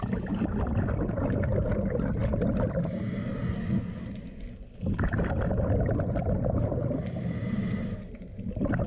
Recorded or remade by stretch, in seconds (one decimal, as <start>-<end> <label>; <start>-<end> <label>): 0.0-8.9 recorded